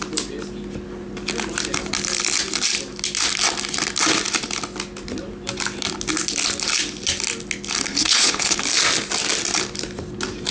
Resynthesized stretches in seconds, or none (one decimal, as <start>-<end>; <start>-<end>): 7.9-8.6